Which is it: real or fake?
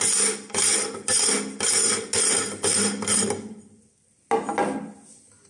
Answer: real